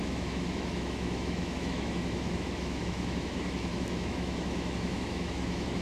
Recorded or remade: remade